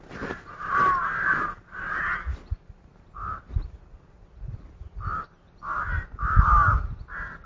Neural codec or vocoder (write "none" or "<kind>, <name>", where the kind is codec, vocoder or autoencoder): none